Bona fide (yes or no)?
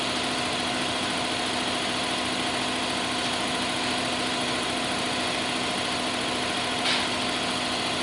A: yes